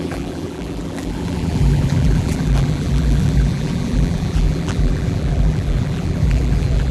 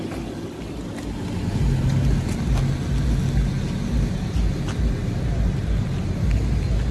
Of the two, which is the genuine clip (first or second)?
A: second